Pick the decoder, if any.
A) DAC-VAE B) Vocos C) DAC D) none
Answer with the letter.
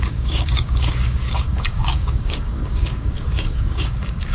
C